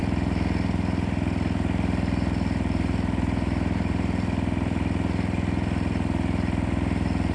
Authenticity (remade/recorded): recorded